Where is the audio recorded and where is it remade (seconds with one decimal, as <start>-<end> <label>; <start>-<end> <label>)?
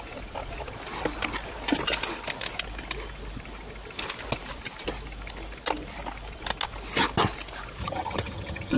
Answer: 0.0-7.8 recorded; 7.8-8.8 remade